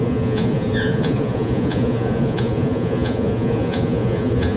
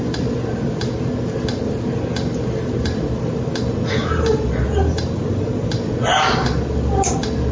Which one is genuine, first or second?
second